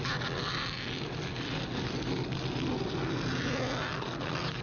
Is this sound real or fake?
real